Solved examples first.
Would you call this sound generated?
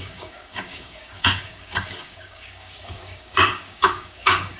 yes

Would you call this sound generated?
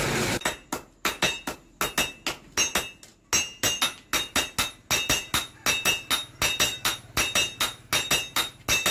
no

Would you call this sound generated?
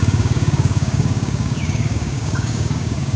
yes